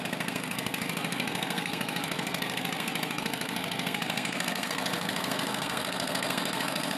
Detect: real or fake fake